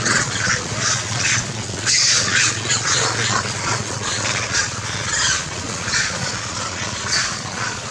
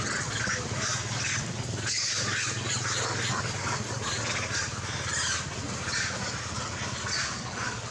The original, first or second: second